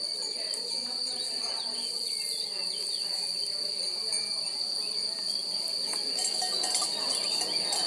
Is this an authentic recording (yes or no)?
yes